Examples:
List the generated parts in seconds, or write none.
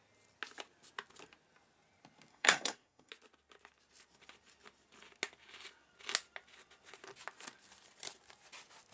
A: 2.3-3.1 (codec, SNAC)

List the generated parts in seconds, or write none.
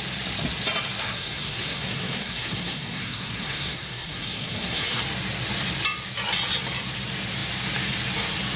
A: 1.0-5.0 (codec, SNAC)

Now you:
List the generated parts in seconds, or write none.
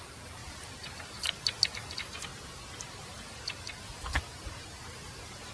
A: none